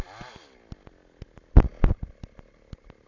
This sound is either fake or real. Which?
real